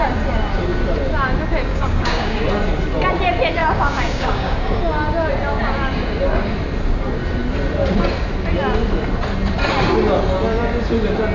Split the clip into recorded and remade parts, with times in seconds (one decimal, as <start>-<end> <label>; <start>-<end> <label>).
0.0-1.7 recorded; 1.7-2.4 remade; 2.4-3.6 recorded; 3.6-4.8 remade; 4.8-11.3 recorded

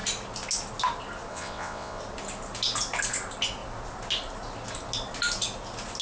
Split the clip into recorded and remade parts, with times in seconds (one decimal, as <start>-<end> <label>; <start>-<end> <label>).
0.0-1.3 recorded; 1.3-2.0 remade; 2.0-6.0 recorded